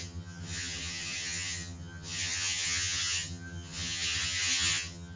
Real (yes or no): no